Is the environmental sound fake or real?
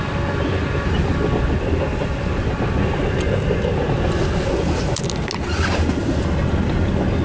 real